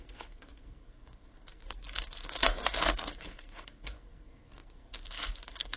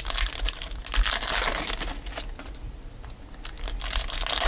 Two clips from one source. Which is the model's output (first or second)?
first